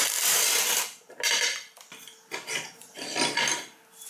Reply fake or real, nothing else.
real